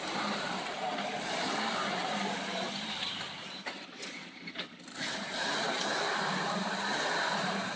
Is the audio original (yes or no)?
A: no